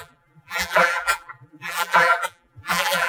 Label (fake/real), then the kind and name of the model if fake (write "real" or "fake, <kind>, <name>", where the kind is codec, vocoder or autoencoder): fake, vocoder, BigVGAN v2